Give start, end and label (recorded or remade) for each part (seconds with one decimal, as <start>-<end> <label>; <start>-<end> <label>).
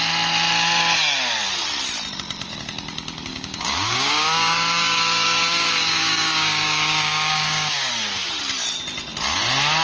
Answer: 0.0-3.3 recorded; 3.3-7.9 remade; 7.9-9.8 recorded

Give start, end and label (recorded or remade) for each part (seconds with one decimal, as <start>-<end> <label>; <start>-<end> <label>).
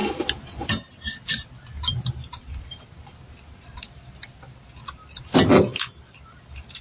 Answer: 0.0-6.8 recorded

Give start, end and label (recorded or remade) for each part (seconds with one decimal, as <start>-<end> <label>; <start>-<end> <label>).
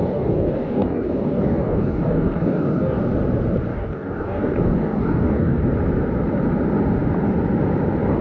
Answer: 0.0-3.0 remade; 3.0-3.7 recorded; 3.7-5.6 remade; 5.6-8.2 recorded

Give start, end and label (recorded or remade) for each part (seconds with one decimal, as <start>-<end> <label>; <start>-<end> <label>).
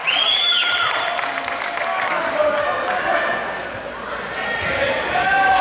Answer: 0.0-0.7 remade; 0.7-1.9 recorded; 1.9-2.6 remade; 2.6-5.6 recorded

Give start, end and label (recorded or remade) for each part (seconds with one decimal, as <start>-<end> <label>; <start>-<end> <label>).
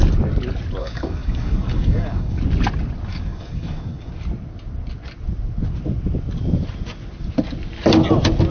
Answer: 0.0-0.8 recorded; 0.8-2.4 remade; 2.4-3.1 recorded; 3.1-4.1 remade; 4.1-8.5 recorded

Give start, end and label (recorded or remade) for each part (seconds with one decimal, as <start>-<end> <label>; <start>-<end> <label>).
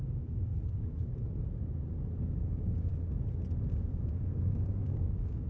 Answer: 0.0-0.5 remade; 0.5-2.2 recorded; 2.2-2.9 remade; 2.9-3.7 recorded; 3.7-5.5 remade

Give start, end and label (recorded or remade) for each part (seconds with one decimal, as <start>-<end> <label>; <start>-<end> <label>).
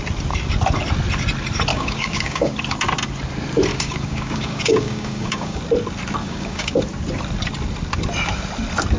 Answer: 0.0-1.7 recorded; 1.7-2.5 remade; 2.5-3.7 recorded; 3.7-5.6 remade; 5.6-6.2 recorded; 6.2-6.8 remade; 6.8-9.0 recorded